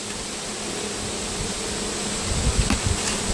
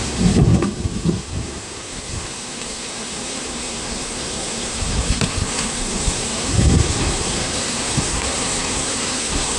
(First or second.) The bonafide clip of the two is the first